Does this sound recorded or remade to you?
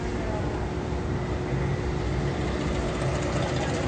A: recorded